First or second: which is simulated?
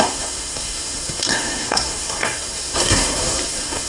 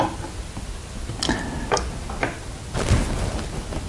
first